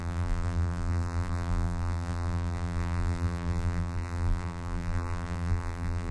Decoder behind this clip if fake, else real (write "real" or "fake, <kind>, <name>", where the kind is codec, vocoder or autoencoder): fake, vocoder, BigVGAN v2